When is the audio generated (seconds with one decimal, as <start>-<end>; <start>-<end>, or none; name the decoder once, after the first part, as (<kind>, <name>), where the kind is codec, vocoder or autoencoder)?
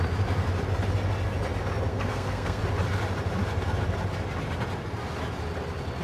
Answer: 1.9-2.6 (codec, SNAC)